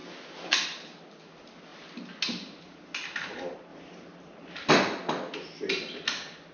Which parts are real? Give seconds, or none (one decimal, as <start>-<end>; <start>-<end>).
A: 0.0-6.5